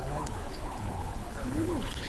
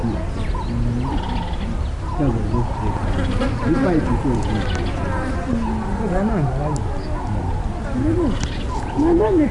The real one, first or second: second